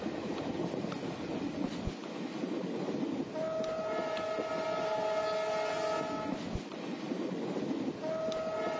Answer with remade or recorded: recorded